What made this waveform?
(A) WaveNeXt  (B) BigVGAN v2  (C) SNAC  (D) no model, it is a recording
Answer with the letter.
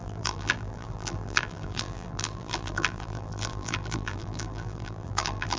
B